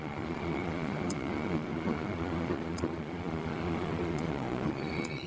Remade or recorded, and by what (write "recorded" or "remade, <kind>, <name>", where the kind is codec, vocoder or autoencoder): remade, vocoder, Vocos